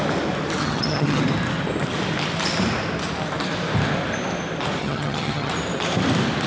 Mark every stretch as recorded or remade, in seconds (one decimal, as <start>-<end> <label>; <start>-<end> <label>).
0.0-0.6 recorded; 0.6-1.2 remade; 1.2-4.8 recorded; 4.8-5.5 remade; 5.5-6.5 recorded